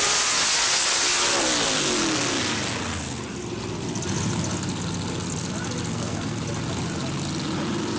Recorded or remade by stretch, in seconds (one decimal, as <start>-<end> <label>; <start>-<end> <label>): 0.0-5.9 recorded; 5.9-6.4 remade; 6.4-8.0 recorded

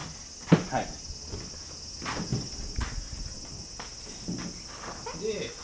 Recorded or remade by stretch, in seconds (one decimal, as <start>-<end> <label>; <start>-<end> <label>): 0.0-5.6 recorded